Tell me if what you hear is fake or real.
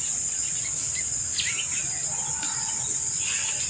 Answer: real